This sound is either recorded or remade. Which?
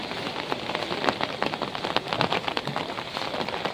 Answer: recorded